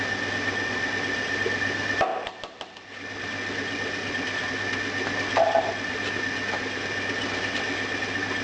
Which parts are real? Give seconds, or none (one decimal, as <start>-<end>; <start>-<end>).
0.0-2.1; 4.5-8.4

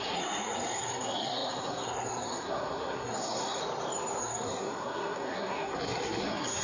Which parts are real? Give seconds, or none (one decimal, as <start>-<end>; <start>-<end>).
3.6-4.2

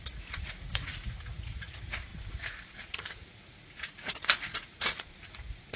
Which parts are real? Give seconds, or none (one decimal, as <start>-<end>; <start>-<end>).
none

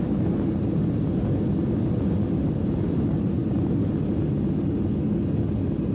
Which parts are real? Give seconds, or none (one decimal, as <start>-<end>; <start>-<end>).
0.0-5.9